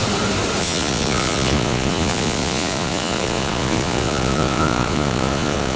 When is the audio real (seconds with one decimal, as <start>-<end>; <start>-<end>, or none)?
0.0-0.6